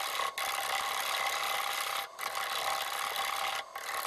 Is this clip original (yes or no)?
yes